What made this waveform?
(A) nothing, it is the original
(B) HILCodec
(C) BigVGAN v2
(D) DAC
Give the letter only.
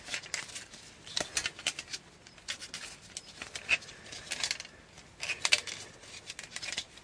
A